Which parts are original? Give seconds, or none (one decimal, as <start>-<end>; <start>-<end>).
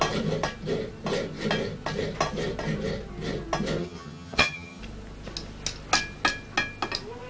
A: 0.0-3.8; 4.8-7.3